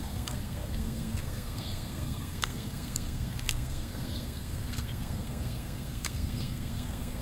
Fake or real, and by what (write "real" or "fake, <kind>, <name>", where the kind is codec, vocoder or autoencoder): fake, codec, SNAC